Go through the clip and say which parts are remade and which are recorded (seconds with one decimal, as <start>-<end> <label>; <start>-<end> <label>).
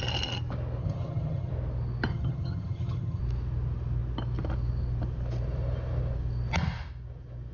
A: 0.0-0.8 recorded; 0.8-1.5 remade; 1.5-2.1 recorded; 2.1-3.2 remade; 3.2-7.5 recorded